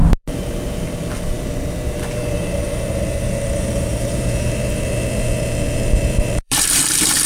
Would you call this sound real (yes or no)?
no